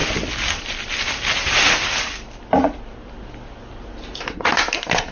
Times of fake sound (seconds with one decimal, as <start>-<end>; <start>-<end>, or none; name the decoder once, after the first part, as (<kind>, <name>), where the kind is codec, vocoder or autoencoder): none